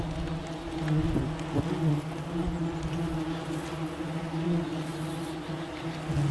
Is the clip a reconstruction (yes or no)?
no